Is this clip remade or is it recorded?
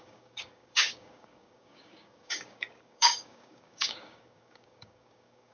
remade